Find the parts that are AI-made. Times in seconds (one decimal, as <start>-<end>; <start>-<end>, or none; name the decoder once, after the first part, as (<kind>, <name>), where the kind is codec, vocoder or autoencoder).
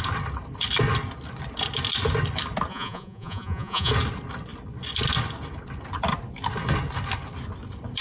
2.7-3.9 (vocoder, Vocos)